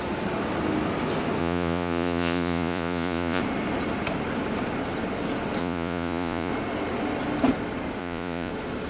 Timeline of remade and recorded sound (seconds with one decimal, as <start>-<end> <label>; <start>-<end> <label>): 0.0-1.4 recorded; 1.4-3.4 remade; 3.4-5.6 recorded; 5.6-6.5 remade; 6.5-8.0 recorded; 8.0-8.5 remade; 8.5-8.9 recorded